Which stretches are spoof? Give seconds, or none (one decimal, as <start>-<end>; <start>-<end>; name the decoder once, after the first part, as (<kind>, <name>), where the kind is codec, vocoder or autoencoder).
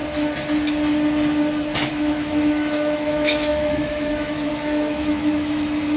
1.9-6.0 (autoencoder, DAC-VAE)